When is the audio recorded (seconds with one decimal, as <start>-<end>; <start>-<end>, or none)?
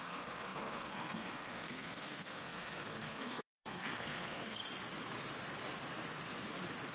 4.6-6.9